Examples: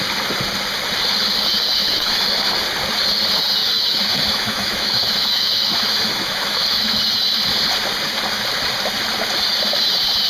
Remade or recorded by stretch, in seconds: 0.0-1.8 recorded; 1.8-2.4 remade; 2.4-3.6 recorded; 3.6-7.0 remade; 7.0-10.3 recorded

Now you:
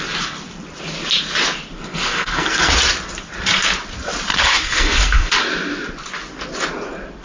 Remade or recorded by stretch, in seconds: 0.0-1.8 recorded; 1.8-2.7 remade; 2.7-4.3 recorded; 4.3-5.3 remade; 5.3-7.2 recorded

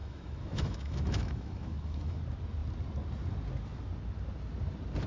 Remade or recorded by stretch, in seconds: 0.0-2.2 remade; 2.2-5.1 recorded

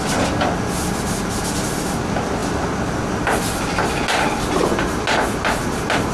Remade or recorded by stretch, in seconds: 0.0-6.1 recorded

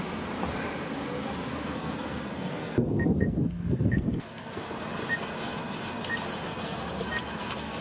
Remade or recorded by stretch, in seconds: 0.0-1.5 recorded; 1.5-4.6 remade; 4.6-6.4 recorded; 6.4-7.8 remade

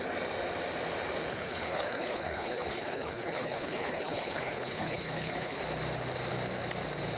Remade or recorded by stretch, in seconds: 0.0-1.3 recorded; 1.3-5.6 remade; 5.6-7.2 recorded

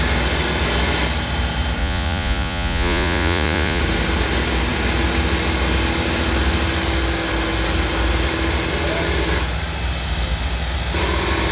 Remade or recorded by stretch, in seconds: 0.0-1.8 recorded; 1.8-3.8 remade; 3.8-11.5 recorded